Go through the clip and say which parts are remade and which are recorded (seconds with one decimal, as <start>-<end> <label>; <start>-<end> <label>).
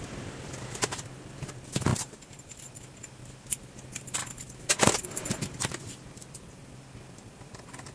0.0-4.2 remade; 4.2-4.8 recorded; 4.8-7.9 remade